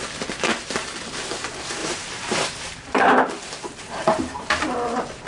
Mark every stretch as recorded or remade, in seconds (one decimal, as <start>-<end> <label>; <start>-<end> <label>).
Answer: 0.0-1.8 recorded; 1.8-5.3 remade